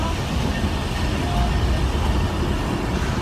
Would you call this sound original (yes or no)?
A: yes